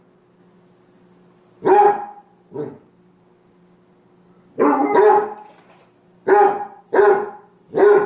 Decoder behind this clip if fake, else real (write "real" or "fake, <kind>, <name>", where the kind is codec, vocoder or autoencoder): real